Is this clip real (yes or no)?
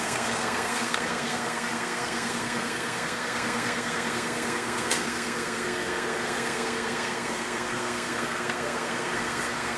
no